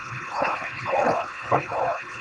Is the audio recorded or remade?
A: remade